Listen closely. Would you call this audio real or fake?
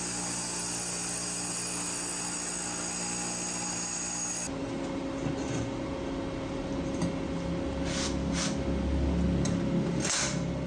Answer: real